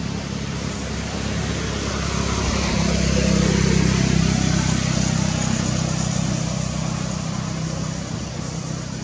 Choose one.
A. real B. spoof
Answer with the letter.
A